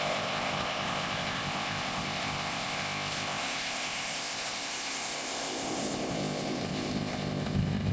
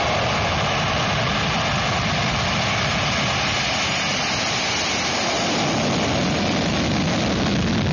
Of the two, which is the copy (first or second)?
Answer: first